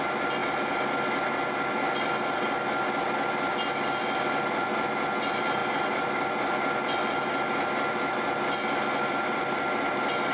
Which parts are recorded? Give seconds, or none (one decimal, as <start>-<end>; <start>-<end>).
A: 0.0-10.3